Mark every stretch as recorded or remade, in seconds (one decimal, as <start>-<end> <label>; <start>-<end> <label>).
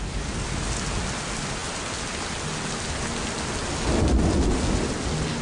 0.0-5.4 recorded